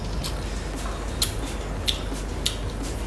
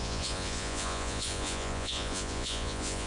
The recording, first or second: first